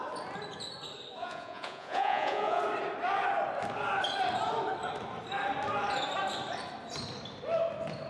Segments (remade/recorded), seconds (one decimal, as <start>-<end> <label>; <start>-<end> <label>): 0.0-1.2 recorded; 1.2-2.6 remade; 2.6-8.1 recorded